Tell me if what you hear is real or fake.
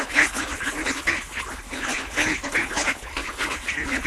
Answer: fake